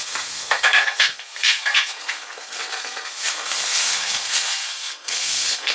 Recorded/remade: remade